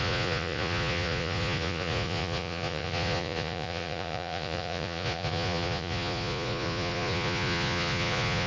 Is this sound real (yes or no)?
no